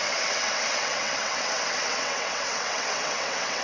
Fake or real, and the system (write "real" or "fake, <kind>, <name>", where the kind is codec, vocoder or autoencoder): fake, vocoder, WaveNeXt